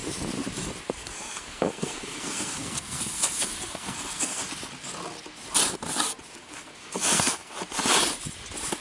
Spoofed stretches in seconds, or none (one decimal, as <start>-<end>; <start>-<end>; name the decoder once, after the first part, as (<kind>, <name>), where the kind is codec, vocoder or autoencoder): 1.0-4.4 (codec, SNAC); 6.4-7.5